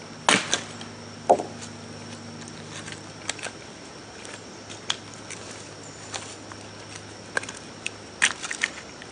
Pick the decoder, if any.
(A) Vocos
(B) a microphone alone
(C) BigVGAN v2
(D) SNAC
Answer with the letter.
B